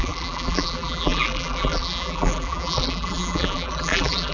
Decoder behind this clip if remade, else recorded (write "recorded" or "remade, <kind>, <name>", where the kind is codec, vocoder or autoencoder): remade, vocoder, BigVGAN v2